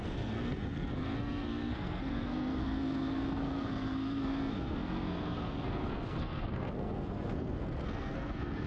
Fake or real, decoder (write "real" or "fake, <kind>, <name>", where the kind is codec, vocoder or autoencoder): fake, codec, SNAC